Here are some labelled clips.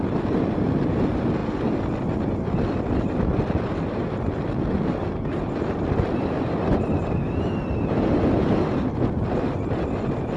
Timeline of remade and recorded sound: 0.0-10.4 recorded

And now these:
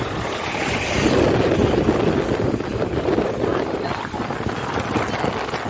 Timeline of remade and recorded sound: 0.0-5.7 recorded

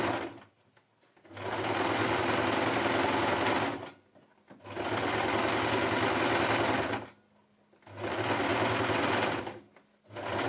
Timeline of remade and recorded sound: 0.0-10.5 recorded

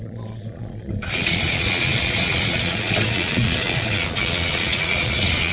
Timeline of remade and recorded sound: 0.0-5.5 remade

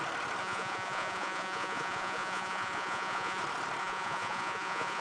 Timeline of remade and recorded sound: 0.0-0.4 recorded; 0.4-3.4 remade; 3.4-3.8 recorded; 3.8-5.0 remade

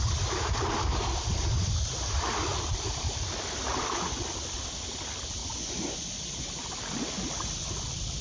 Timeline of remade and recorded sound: 0.0-5.4 recorded; 5.4-6.1 remade; 6.1-8.2 recorded